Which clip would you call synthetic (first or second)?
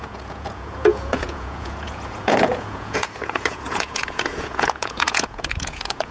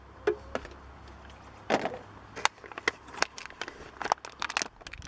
first